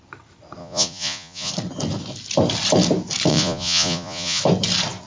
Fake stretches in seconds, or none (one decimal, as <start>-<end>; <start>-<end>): 0.6-1.5; 3.3-4.4